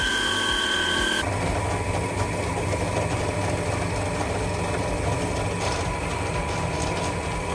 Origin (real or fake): real